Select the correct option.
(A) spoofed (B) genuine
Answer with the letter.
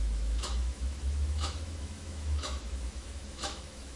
A